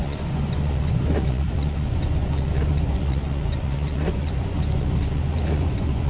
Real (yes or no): no